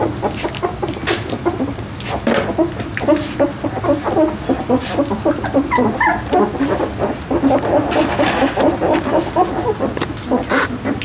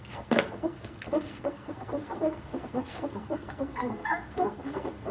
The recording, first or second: first